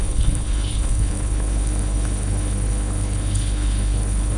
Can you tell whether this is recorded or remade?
remade